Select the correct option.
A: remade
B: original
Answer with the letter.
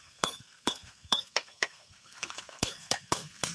A